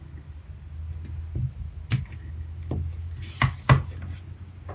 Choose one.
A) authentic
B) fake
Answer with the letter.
A